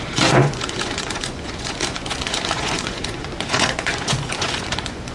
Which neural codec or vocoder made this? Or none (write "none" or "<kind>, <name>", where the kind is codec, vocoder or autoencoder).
vocoder, Vocos